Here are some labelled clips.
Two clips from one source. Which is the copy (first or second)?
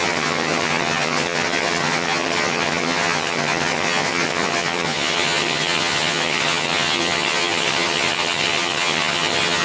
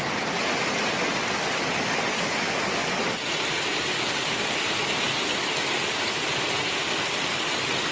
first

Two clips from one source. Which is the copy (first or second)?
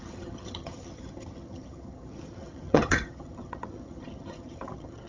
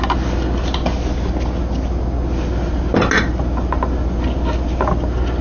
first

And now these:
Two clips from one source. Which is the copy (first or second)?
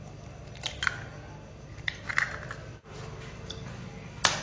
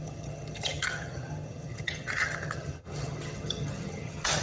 second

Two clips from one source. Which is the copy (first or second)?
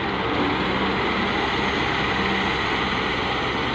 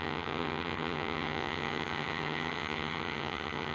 second